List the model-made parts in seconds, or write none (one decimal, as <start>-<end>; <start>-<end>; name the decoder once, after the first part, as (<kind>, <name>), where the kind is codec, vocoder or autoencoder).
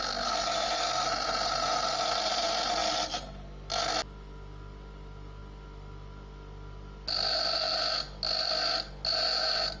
none